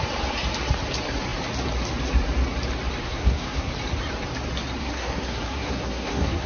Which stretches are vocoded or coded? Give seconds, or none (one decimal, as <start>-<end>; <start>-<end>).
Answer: 3.0-3.7; 4.8-6.5